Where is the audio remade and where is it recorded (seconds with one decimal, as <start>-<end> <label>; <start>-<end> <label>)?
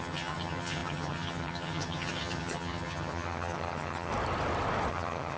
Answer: 0.0-4.1 remade; 4.1-4.9 recorded; 4.9-5.4 remade